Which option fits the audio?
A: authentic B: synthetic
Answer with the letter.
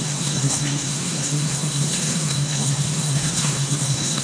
B